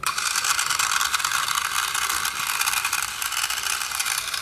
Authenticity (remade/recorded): remade